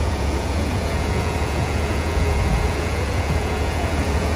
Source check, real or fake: fake